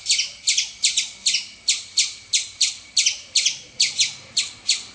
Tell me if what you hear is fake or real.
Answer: real